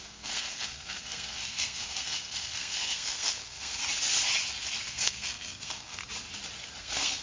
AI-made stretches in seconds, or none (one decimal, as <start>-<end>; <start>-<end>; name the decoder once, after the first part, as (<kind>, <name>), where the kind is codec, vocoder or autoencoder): 0.0-3.8 (codec, SNAC); 4.8-6.0; 6.8-7.2